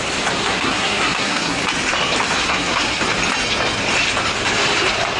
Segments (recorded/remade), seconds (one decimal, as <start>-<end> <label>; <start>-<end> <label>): 0.0-0.4 recorded; 0.4-1.6 remade; 1.6-2.4 recorded; 2.4-3.0 remade; 3.0-5.2 recorded